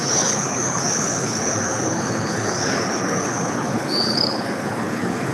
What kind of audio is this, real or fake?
fake